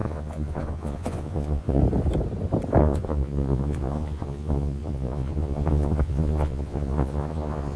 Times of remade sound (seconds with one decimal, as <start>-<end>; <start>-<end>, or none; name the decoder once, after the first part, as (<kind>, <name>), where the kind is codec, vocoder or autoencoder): 0.0-1.8 (vocoder, Vocos); 2.8-7.8